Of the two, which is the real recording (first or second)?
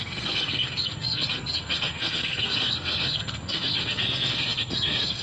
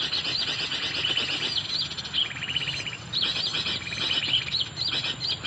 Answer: second